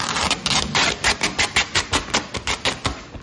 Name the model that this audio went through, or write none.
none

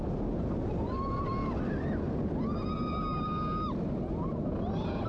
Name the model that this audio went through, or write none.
none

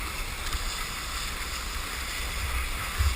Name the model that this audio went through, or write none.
none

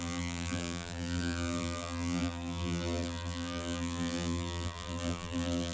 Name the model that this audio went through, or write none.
vocoder, BigVGAN v2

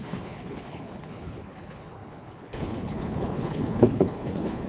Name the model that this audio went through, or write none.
codec, HILCodec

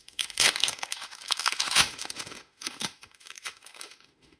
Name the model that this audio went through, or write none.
autoencoder, DAC-VAE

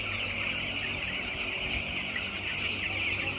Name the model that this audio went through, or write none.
none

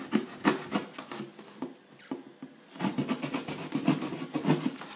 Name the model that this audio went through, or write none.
none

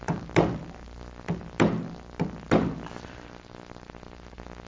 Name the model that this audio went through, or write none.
none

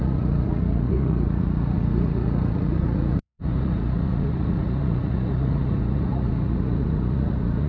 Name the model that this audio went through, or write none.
vocoder, Vocos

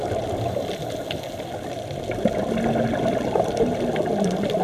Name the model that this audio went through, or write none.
none